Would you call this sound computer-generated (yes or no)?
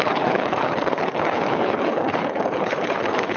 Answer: yes